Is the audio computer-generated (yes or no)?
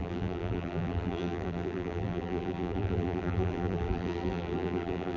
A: yes